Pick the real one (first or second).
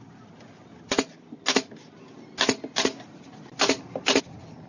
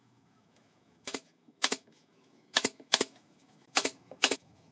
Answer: first